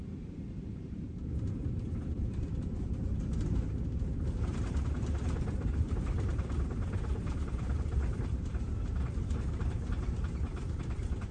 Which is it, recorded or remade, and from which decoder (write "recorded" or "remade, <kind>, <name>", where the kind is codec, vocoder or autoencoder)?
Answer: remade, vocoder, BigVGAN v2